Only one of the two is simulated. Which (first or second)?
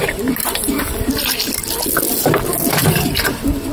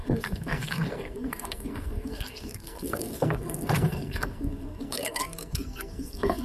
second